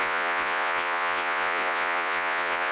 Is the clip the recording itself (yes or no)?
no